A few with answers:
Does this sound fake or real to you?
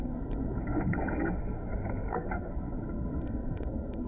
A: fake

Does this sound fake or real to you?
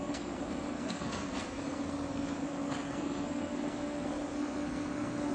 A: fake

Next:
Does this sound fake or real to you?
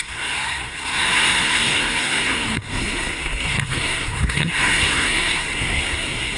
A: fake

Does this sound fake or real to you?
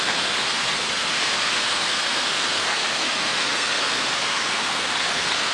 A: fake